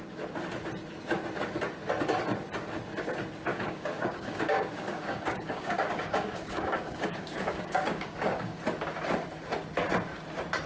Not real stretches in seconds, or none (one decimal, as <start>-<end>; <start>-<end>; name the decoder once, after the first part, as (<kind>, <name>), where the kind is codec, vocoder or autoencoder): 3.5-8.6 (codec, DAC)